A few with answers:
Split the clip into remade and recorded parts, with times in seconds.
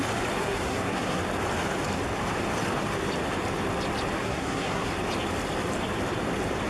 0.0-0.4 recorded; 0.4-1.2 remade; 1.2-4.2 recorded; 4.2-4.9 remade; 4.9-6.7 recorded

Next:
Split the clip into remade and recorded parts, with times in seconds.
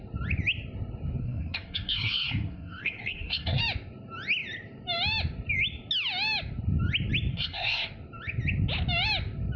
0.0-1.2 recorded; 1.2-3.6 remade; 3.6-7.3 recorded; 7.3-7.9 remade; 7.9-9.6 recorded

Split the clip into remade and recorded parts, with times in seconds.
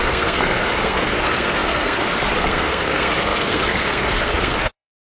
0.0-5.0 remade